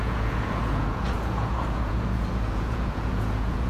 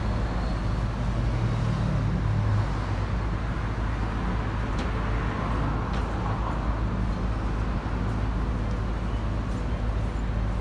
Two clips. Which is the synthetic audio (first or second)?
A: first